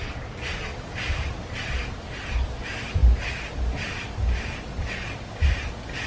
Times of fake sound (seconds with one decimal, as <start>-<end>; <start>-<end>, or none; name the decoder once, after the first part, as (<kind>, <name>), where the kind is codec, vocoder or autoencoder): none

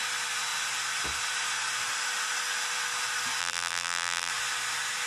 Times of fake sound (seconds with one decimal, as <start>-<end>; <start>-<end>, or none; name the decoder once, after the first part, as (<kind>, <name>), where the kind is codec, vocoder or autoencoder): 3.4-4.3 (vocoder, BigVGAN v2)

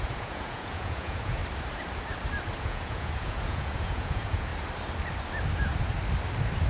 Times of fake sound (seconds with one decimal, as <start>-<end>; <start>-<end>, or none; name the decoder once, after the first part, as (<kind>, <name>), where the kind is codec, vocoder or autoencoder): 0.0-1.4 (vocoder, Vocos); 2.6-4.5

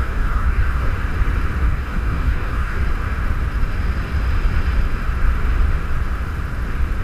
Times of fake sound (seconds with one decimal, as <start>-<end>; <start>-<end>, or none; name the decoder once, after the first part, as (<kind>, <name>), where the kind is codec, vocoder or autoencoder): 0.0-0.9 (codec, DAC); 1.6-2.8

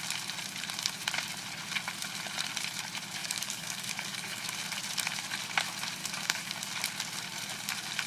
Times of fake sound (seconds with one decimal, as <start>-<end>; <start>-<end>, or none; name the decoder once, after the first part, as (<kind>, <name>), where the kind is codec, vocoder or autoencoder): 3.2-4.4 (codec, DAC); 6.0-6.6

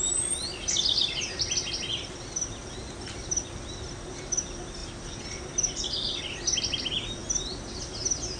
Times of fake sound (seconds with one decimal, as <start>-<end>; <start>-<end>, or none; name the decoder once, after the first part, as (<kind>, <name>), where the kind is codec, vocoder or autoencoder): none

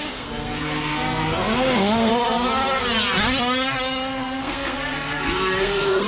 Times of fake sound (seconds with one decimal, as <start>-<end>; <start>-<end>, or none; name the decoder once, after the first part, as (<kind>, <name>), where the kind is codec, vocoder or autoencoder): 0.0-2.1 (codec, SNAC); 4.4-6.1